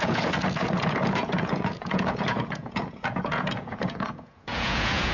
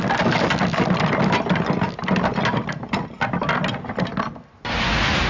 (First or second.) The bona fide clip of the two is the second